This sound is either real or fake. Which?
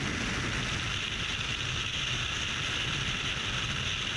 real